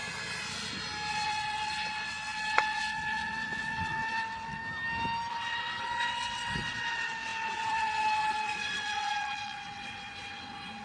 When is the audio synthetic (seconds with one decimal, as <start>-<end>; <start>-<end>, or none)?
1.1-4.6; 5.3-10.8